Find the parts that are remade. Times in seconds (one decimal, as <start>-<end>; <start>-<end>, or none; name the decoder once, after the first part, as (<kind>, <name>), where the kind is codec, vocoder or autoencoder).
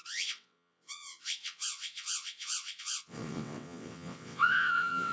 0.0-5.1 (vocoder, WaveNeXt)